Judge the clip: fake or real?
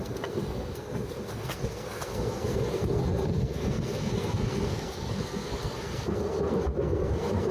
fake